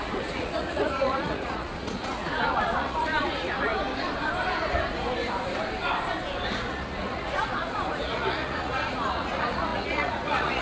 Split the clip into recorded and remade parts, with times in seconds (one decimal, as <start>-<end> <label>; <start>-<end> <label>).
0.0-3.7 remade; 3.7-6.7 recorded; 6.7-10.6 remade